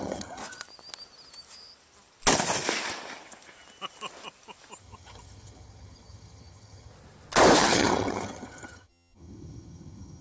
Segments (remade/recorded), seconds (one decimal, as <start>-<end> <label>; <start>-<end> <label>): 0.0-0.4 remade; 0.4-4.8 recorded; 4.8-6.9 remade; 6.9-7.6 recorded; 7.6-10.2 remade